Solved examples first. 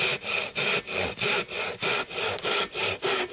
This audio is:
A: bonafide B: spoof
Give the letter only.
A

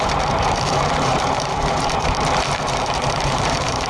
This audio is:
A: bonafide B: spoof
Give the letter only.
B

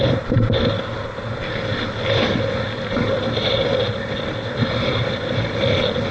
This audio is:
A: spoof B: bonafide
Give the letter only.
B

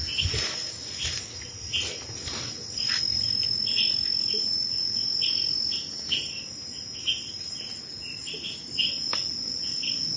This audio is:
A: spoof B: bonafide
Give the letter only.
B